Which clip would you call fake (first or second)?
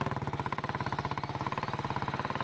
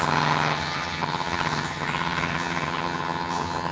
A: second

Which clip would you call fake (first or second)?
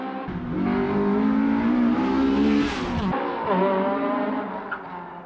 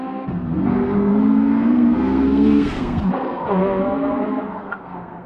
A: second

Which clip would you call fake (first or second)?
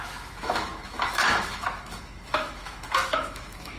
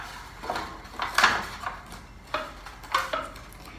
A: first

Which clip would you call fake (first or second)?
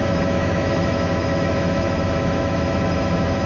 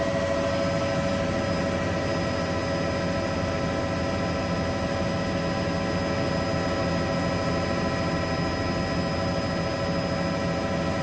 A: first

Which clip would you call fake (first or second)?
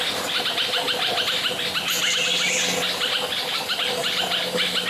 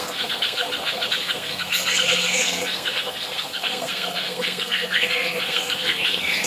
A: second